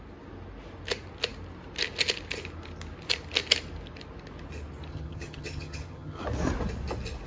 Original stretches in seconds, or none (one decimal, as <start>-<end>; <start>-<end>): 0.0-4.9; 6.2-7.3